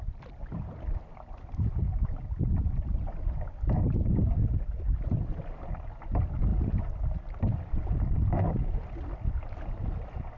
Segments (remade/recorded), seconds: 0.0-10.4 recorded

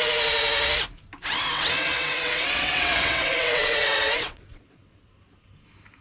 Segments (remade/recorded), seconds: 0.0-1.5 recorded; 1.5-5.1 remade; 5.1-6.0 recorded

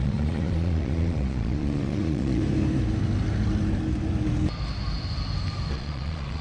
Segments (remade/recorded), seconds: 0.0-2.4 remade; 2.4-5.7 recorded; 5.7-6.4 remade